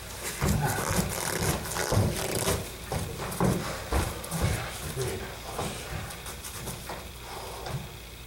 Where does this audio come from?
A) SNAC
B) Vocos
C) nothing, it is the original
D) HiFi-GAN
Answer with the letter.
C